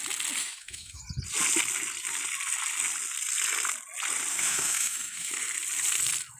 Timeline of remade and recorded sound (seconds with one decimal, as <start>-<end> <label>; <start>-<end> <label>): 0.0-0.4 recorded; 0.4-1.0 remade; 1.0-4.3 recorded; 4.3-5.3 remade; 5.3-6.4 recorded